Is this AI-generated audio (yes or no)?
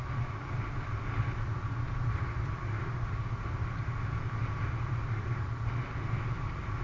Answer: no